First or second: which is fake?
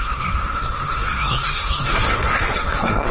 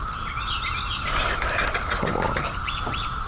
first